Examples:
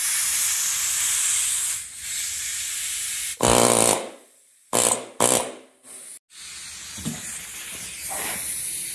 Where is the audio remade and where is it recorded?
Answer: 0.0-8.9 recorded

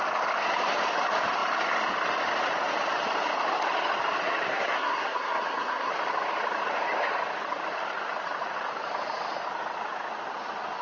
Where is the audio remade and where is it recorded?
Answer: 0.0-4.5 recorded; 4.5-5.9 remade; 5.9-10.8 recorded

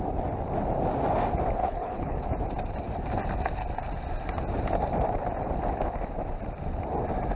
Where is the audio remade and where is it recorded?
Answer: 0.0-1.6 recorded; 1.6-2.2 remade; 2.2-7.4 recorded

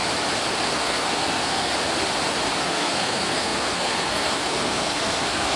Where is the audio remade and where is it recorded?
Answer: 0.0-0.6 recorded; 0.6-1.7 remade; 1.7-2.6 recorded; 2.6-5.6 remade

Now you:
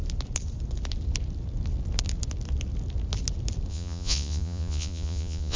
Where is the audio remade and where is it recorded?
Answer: 0.0-3.7 recorded; 3.7-5.6 remade